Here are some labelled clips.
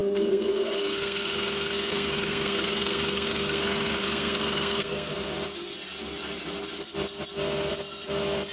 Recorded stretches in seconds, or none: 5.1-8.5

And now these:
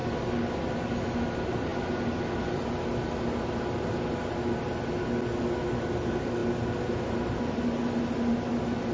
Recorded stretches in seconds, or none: 0.0-8.9

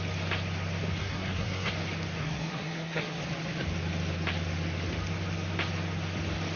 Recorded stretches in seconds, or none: 0.0-1.0; 1.7-2.2; 3.2-6.6

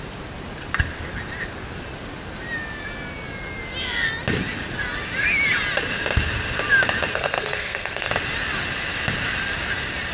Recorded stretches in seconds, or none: 0.0-7.1; 8.1-10.1